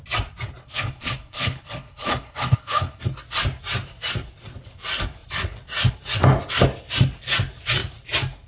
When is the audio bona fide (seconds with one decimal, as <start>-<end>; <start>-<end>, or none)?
0.0-0.6; 3.0-8.5